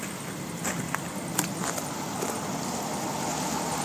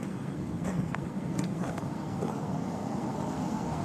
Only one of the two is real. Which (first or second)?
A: first